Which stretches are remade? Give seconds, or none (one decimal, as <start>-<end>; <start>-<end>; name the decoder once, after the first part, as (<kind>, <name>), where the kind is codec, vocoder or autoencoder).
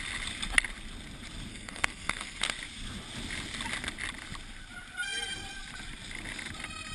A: 1.5-2.4 (codec, SNAC)